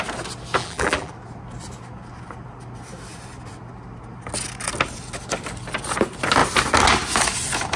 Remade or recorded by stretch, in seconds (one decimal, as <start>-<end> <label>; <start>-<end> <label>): 0.0-0.6 recorded; 0.6-1.1 remade; 1.1-7.8 recorded